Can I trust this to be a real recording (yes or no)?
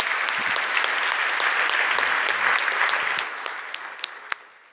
yes